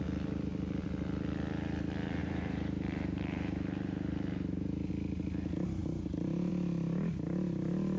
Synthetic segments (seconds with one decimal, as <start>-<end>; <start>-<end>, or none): 2.2-4.9; 5.8-6.5